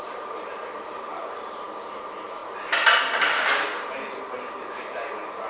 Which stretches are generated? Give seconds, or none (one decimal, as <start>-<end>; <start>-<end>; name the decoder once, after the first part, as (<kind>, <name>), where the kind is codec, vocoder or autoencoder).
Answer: 0.0-1.2 (vocoder, BigVGAN v2); 1.8-2.4